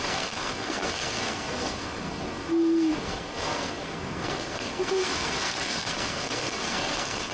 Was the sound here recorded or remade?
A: remade